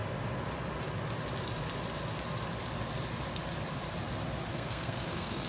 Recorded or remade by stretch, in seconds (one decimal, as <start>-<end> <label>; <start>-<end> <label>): 0.0-4.5 recorded; 4.5-5.5 remade